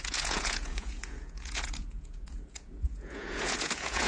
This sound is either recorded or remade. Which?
remade